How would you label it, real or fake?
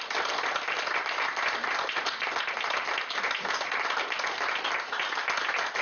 real